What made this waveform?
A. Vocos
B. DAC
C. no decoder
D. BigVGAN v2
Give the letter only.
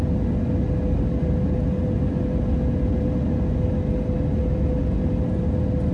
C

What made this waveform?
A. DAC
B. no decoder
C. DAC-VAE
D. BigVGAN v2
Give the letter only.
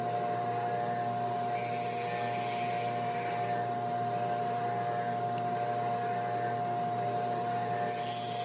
B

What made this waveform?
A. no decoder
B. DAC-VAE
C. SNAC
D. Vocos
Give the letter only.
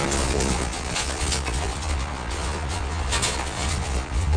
D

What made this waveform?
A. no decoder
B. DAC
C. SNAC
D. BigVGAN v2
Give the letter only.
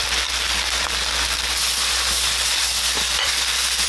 A